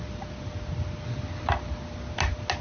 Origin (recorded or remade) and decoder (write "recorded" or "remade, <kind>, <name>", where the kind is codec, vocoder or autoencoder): recorded